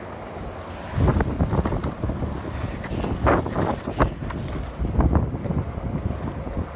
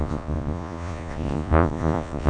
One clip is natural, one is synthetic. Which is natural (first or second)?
first